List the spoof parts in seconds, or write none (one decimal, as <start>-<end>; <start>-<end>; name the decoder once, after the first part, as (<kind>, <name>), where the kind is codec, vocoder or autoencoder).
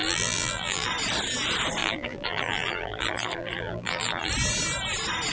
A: 0.0-0.9 (vocoder, BigVGAN v2); 1.8-4.3